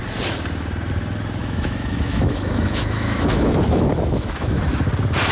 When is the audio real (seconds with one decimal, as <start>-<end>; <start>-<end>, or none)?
0.0-1.4; 4.6-5.3